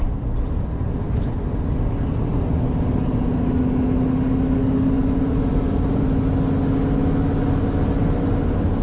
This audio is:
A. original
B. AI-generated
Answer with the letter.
A